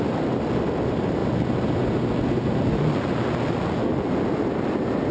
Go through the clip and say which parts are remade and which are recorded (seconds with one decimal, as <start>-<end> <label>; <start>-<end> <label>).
0.0-5.1 recorded